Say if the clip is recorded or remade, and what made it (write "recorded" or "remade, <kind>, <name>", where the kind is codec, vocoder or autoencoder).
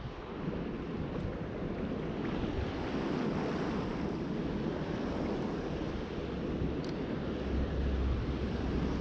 recorded